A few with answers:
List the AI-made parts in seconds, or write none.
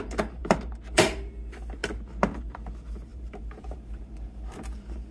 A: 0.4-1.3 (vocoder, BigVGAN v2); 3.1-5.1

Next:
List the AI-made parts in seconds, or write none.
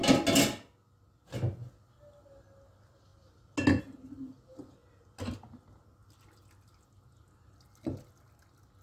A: none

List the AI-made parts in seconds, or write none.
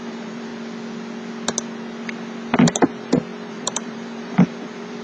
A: 0.0-0.5 (vocoder, BigVGAN v2); 3.5-5.0